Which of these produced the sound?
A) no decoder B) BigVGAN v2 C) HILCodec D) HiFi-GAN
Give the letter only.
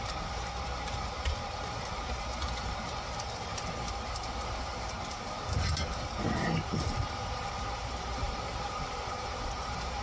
B